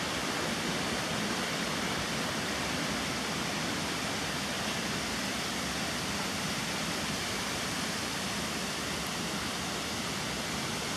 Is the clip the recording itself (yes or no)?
yes